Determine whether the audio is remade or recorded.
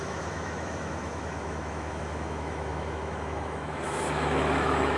remade